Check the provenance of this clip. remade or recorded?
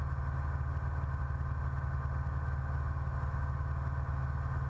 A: recorded